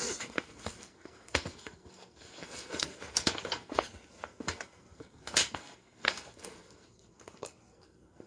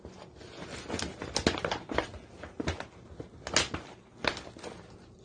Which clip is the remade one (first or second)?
first